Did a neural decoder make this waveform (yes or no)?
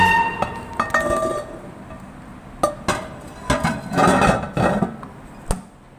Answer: no